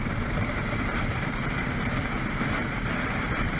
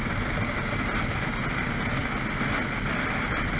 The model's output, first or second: first